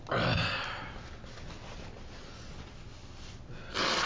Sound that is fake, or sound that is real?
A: real